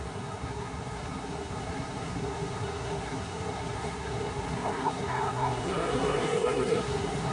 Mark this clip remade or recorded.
remade